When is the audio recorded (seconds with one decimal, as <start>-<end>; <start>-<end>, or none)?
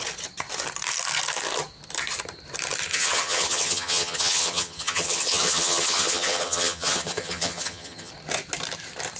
0.0-2.9; 8.1-9.2